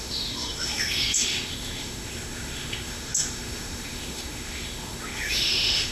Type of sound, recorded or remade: remade